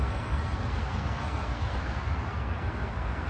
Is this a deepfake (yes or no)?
yes